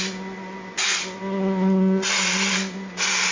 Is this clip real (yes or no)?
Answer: yes